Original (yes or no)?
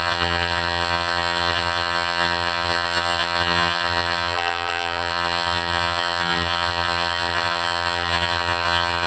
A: no